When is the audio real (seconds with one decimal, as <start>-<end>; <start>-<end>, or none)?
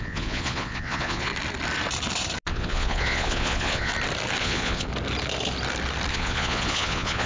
1.3-2.5; 3.9-4.4; 4.9-6.1